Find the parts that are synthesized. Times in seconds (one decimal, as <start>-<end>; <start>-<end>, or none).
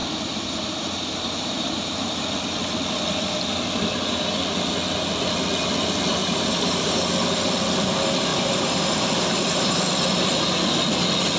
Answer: 0.0-2.2; 6.1-7.0; 8.3-9.8